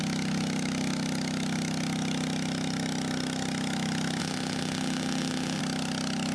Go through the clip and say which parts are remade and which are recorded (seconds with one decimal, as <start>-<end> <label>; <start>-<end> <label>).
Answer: 0.0-4.2 recorded; 4.2-5.6 remade; 5.6-6.3 recorded